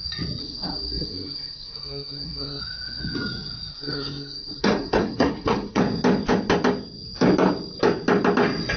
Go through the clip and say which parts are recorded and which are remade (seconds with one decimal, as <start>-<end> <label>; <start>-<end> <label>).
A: 0.0-0.4 recorded; 0.4-2.6 remade; 2.6-3.7 recorded; 3.7-5.8 remade; 5.8-8.8 recorded